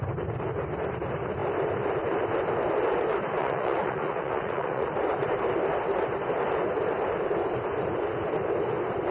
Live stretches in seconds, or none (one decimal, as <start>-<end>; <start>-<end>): 0.0-3.4; 4.9-9.1